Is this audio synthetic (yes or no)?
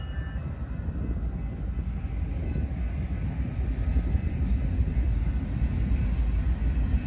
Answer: no